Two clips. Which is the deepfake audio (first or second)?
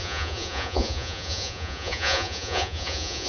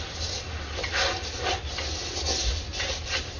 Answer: first